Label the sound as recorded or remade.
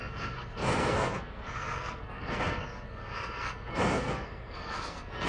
remade